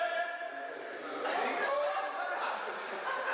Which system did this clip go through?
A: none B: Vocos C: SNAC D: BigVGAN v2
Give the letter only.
A